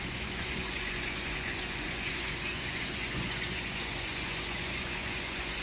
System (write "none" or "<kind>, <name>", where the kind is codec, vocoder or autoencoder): vocoder, Vocos